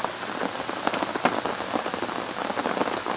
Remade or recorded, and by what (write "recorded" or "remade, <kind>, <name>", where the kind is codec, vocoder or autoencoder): recorded